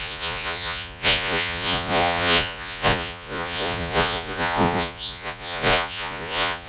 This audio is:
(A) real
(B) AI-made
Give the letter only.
B